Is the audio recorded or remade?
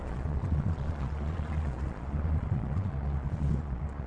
remade